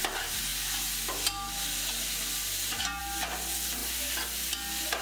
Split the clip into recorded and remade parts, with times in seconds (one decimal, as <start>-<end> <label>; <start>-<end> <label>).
0.0-5.0 recorded